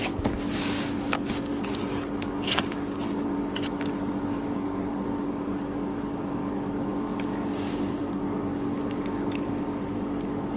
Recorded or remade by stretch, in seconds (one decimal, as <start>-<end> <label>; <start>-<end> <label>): 0.0-10.6 remade